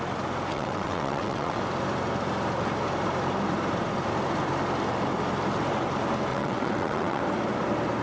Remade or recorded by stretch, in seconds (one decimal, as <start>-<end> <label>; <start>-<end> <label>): 0.0-0.5 recorded; 0.5-1.6 remade; 1.6-6.3 recorded; 6.3-7.2 remade; 7.2-8.0 recorded